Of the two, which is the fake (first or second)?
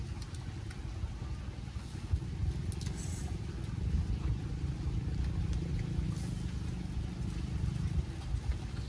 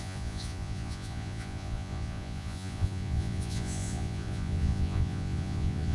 second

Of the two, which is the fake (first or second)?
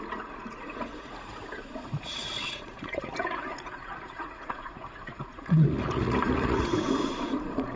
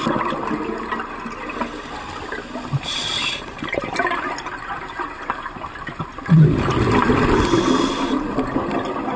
first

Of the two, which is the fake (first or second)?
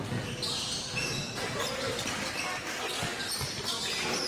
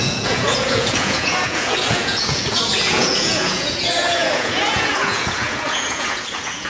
second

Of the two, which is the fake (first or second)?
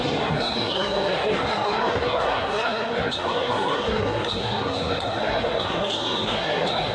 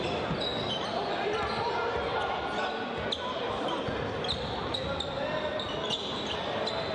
first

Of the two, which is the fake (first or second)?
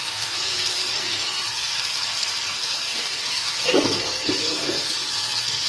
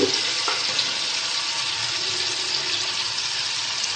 first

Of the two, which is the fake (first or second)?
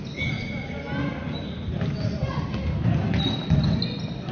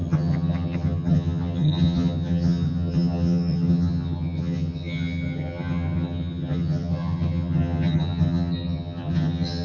second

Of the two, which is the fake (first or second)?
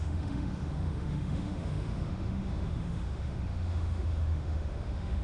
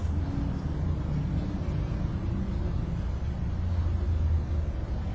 first